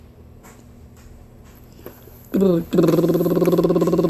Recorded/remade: recorded